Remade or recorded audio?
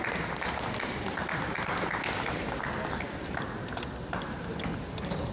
recorded